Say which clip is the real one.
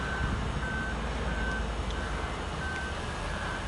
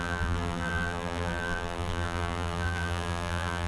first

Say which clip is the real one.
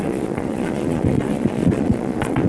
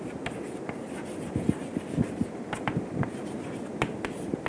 second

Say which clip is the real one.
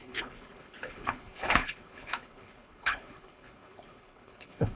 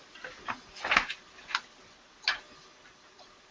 second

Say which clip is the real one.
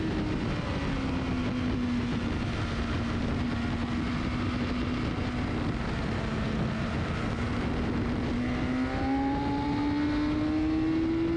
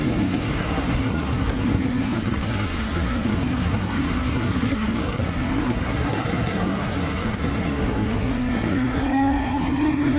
first